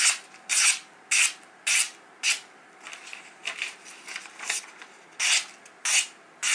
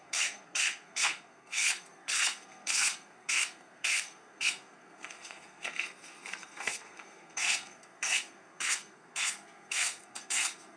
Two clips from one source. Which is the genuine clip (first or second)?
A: first